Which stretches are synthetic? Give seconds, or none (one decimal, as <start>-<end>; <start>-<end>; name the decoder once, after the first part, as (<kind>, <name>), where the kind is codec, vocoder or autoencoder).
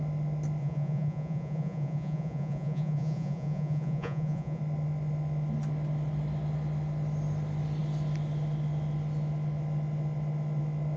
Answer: 0.6-4.6 (vocoder, Vocos)